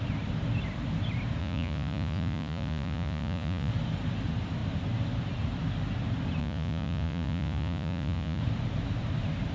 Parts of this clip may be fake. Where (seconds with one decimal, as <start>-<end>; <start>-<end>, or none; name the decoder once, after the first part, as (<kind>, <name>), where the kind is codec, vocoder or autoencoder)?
1.4-3.7 (vocoder, Vocos); 6.4-8.4